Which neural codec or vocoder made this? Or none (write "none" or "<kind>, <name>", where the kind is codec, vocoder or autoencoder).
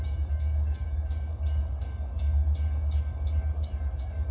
codec, DAC